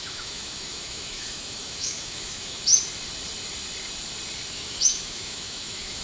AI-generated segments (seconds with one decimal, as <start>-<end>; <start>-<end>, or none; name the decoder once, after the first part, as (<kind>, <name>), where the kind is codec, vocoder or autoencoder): 0.0-2.7 (autoencoder, DAC-VAE); 4.5-6.0